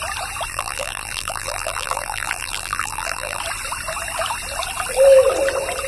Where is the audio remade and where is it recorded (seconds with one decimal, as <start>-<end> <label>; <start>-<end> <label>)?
0.0-0.5 recorded; 0.5-3.4 remade; 3.4-5.9 recorded